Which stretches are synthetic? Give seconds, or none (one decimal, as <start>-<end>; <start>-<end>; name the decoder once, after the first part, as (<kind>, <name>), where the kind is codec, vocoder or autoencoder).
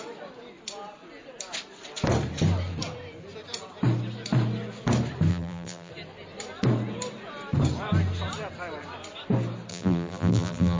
5.3-5.9 (vocoder, BigVGAN v2); 9.7-10.8